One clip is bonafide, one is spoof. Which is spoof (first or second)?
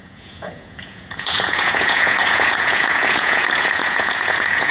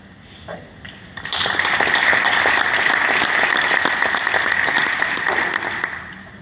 first